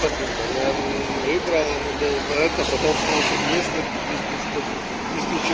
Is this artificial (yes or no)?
yes